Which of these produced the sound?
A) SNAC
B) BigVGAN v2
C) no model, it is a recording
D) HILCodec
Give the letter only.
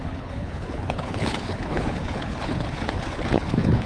D